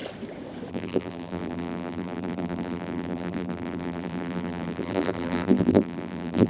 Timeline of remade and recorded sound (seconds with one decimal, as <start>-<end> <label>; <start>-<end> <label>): 0.0-0.7 recorded; 0.7-6.5 remade